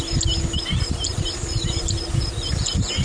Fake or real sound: real